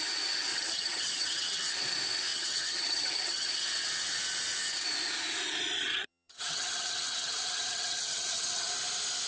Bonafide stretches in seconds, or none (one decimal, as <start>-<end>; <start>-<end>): 0.0-0.5; 1.7-2.3; 3.5-5.9; 8.7-9.3